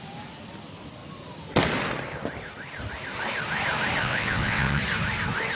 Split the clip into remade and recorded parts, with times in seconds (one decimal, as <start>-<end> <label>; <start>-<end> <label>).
0.0-4.0 recorded; 4.0-4.8 remade; 4.8-5.5 recorded